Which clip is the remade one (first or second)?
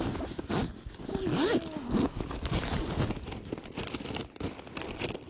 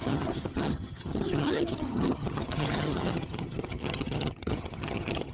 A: second